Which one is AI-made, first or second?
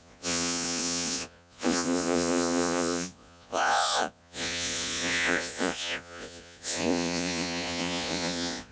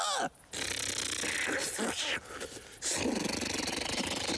first